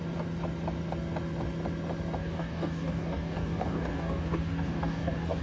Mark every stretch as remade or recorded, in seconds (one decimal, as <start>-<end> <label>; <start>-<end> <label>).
0.0-2.2 recorded; 2.2-5.4 remade